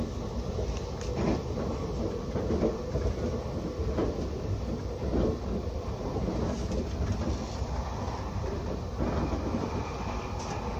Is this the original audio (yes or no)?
yes